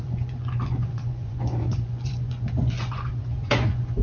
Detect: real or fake fake